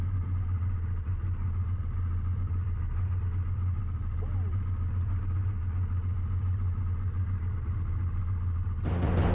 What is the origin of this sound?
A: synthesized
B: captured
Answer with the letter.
B